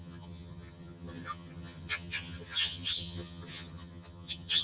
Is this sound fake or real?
fake